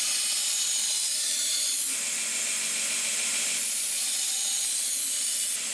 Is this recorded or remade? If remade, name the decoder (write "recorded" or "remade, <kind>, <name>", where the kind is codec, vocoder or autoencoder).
recorded